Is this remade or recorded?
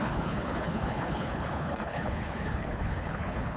remade